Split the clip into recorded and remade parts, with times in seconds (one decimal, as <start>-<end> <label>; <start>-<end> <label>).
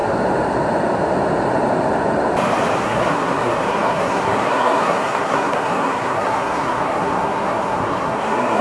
0.0-2.8 recorded; 2.8-8.6 remade